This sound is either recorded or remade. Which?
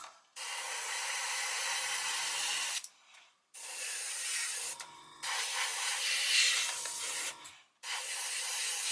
remade